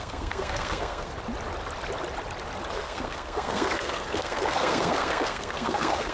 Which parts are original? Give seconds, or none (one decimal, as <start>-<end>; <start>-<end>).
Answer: 1.1-2.7